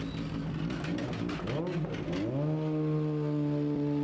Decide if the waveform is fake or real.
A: real